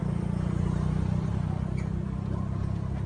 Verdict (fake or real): real